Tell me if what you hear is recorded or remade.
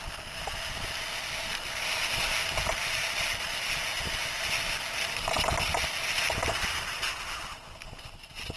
recorded